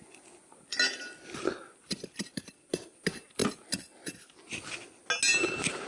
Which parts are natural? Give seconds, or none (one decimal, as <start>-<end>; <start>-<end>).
0.0-5.9